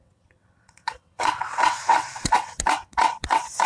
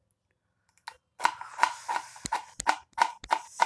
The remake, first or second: first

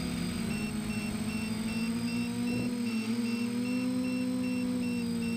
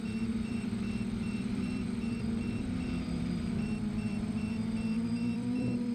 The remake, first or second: second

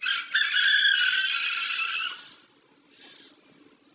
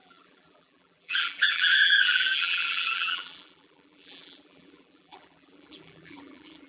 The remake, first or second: second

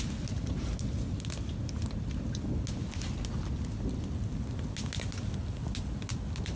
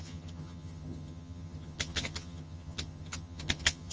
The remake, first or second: second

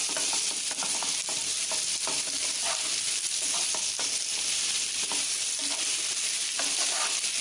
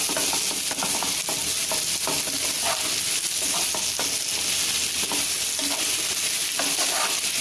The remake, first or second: first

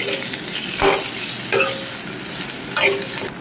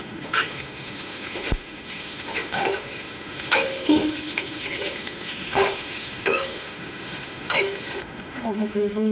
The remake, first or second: second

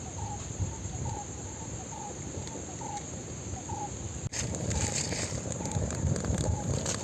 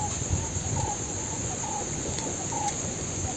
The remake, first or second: second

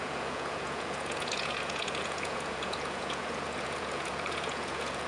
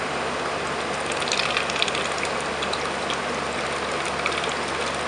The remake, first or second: first